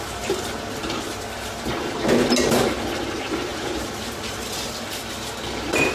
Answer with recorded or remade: recorded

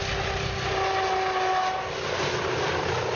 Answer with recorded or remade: recorded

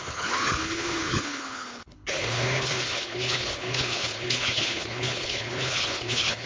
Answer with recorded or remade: remade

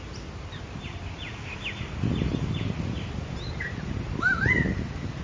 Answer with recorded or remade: recorded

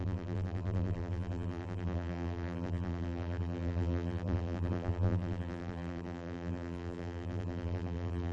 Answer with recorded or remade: remade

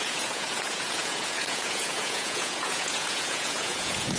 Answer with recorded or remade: remade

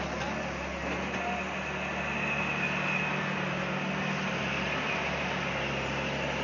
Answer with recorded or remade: recorded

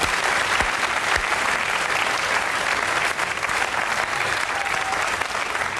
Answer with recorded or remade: recorded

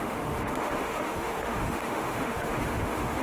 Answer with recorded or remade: remade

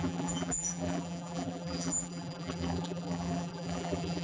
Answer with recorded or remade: remade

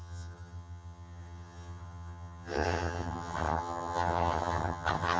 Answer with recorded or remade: remade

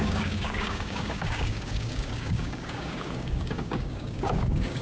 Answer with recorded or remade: remade